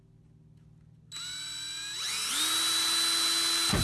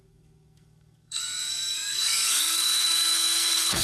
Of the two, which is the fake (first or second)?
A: second